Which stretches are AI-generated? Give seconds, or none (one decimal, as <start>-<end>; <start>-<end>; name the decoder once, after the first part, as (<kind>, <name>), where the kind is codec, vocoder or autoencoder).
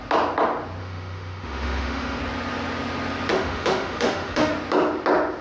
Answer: 0.8-2.2 (autoencoder, DAC-VAE); 3.3-4.5